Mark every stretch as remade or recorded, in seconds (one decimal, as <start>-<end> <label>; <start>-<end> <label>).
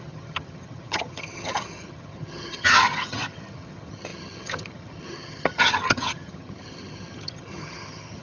0.0-8.2 remade